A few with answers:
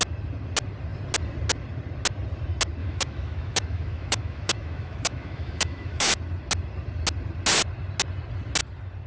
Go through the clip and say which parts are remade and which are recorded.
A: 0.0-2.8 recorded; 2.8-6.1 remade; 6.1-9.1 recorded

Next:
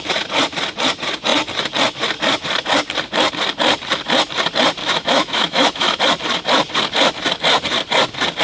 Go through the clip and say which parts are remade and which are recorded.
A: 0.0-4.8 recorded; 4.8-6.0 remade; 6.0-8.4 recorded

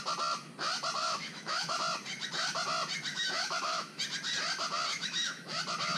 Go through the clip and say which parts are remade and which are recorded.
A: 0.0-1.0 recorded; 1.0-1.8 remade; 1.8-3.1 recorded; 3.1-4.0 remade; 4.0-4.9 recorded; 4.9-5.6 remade; 5.6-6.0 recorded

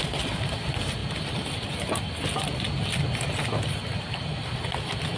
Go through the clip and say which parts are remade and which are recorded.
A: 0.0-5.2 recorded

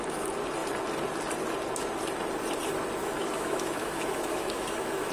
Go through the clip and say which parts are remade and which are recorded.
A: 0.0-3.0 recorded; 3.0-5.1 remade

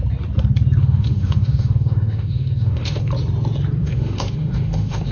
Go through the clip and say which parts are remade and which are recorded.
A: 0.0-0.8 recorded; 0.8-3.1 remade; 3.1-3.8 recorded; 3.8-5.1 remade